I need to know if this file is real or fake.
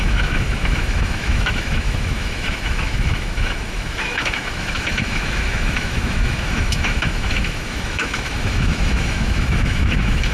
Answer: fake